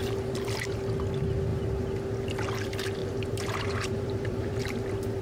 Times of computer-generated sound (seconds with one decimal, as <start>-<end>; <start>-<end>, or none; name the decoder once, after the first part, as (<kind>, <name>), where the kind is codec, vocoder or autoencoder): 0.0-0.9 (vocoder, BigVGAN v2); 3.0-4.6